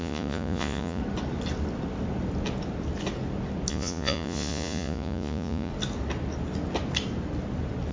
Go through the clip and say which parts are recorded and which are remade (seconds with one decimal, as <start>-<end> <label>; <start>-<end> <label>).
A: 0.0-1.0 remade; 1.0-3.7 recorded; 3.7-5.7 remade; 5.7-7.9 recorded